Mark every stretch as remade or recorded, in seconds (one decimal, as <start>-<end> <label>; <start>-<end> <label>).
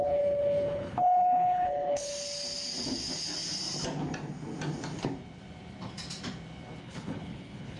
0.0-2.1 remade; 2.1-6.8 recorded; 6.8-7.8 remade